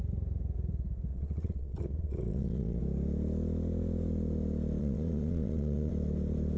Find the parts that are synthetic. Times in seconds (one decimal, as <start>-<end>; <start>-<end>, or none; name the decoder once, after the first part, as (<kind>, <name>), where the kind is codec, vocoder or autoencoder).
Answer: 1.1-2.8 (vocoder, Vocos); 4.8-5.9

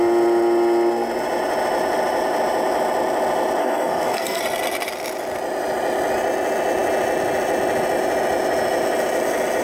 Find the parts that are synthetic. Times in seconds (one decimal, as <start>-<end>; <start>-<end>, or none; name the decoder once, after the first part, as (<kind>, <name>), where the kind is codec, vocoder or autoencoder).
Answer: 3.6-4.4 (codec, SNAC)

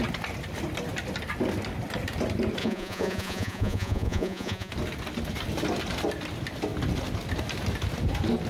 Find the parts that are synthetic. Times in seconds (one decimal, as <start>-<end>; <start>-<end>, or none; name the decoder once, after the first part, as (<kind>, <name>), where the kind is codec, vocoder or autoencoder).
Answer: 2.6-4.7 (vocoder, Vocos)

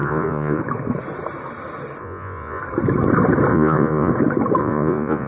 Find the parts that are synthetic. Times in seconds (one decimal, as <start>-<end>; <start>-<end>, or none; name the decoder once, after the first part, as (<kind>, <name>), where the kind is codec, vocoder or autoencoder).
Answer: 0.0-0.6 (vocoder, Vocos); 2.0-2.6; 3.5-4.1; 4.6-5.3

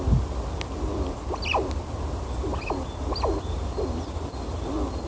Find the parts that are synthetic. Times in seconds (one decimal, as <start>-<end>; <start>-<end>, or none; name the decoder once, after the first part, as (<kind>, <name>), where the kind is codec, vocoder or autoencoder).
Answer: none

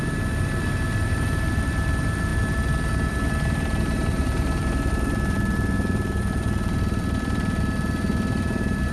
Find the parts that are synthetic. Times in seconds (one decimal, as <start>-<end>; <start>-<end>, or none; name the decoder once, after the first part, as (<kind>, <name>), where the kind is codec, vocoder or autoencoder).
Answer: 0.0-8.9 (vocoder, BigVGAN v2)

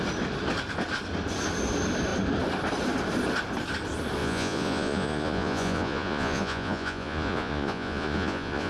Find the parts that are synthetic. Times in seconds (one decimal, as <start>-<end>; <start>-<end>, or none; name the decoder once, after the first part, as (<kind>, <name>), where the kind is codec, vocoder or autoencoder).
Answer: 4.2-8.7 (vocoder, Vocos)